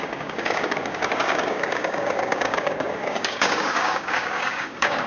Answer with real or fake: fake